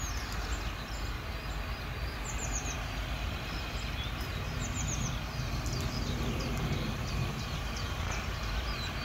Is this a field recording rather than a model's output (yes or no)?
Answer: no